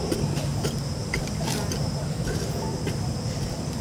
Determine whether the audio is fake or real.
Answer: real